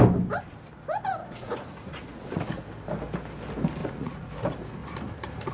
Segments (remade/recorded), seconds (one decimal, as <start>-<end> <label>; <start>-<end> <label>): 0.0-1.2 recorded; 1.2-2.6 remade; 2.6-3.8 recorded; 3.8-4.3 remade; 4.3-5.5 recorded